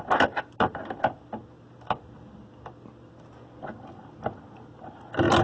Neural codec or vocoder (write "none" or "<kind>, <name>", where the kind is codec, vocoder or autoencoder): none